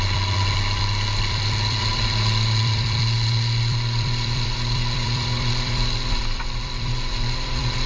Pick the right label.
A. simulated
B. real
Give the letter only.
A